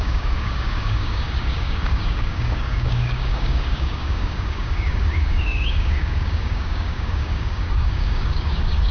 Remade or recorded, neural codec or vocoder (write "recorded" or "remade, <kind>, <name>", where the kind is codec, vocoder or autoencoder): remade, codec, DAC